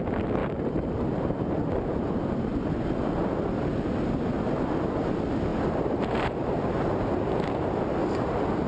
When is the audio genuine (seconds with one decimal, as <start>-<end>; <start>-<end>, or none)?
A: 0.0-0.4; 1.3-5.5; 7.5-8.7